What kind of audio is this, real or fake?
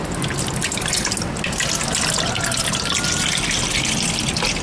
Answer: real